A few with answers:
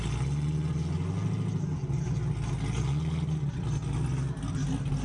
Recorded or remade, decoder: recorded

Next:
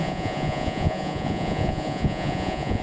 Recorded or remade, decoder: remade, vocoder, Vocos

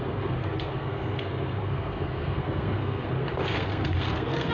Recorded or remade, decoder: remade, codec, SNAC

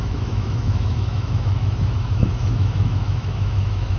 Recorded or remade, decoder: remade, autoencoder, DAC-VAE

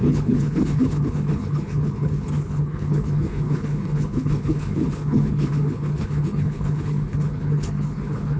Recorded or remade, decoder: remade, codec, HILCodec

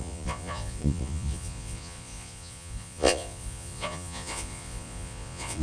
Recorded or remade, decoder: remade, vocoder, Vocos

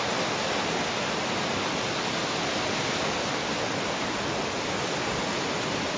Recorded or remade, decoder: recorded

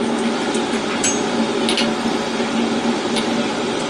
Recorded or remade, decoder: recorded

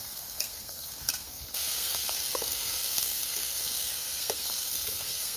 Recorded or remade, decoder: remade, codec, SNAC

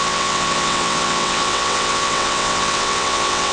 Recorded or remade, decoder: remade, vocoder, WaveNeXt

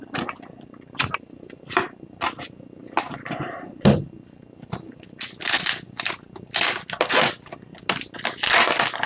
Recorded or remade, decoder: recorded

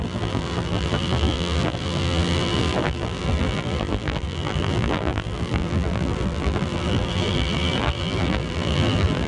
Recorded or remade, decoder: remade, vocoder, BigVGAN v2